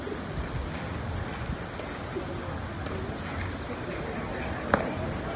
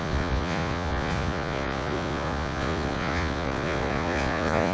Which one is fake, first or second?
second